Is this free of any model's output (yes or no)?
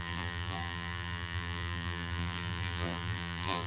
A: no